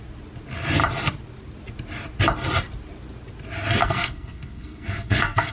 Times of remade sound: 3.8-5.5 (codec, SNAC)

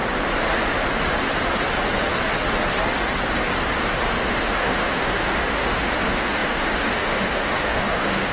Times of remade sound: 4.3-8.3 (autoencoder, DAC-VAE)

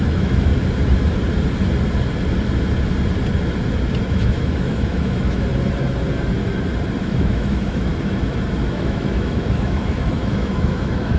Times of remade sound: 0.0-0.5 (autoencoder, DAC-VAE); 4.0-5.5; 7.0-7.9; 8.7-11.2

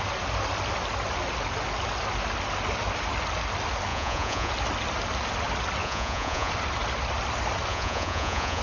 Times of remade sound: 3.9-4.5 (vocoder, Vocos); 5.8-6.5; 7.7-8.6

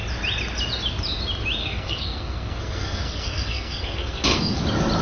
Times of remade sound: 1.6-4.6 (codec, SNAC)

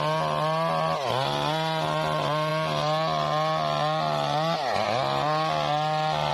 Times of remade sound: none

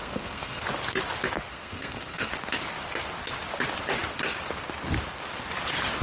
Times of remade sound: 0.0-0.6 (codec, SNAC); 1.5-2.3

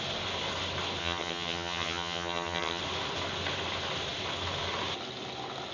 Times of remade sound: 1.0-2.8 (vocoder, HiFi-GAN)